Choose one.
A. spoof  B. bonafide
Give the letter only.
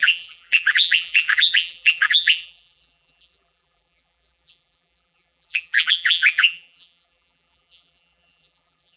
A